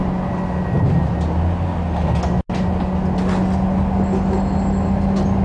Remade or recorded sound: recorded